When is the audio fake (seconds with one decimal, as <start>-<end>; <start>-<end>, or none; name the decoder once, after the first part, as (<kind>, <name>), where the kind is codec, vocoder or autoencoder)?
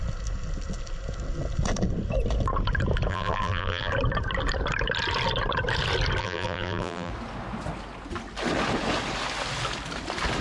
3.1-3.9 (vocoder, BigVGAN v2); 6.2-7.1